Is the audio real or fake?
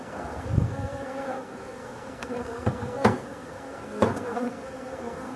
fake